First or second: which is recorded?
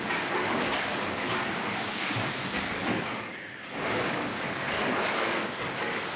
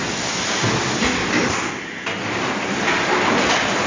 second